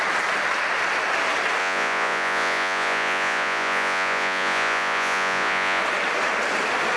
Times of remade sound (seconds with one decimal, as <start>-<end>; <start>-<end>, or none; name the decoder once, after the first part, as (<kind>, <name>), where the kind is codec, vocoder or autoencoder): 1.6-5.8 (vocoder, Vocos)